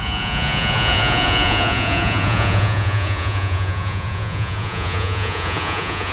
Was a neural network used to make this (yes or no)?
yes